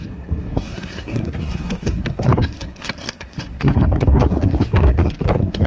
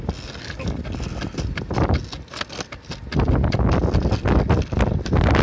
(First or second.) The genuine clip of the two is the second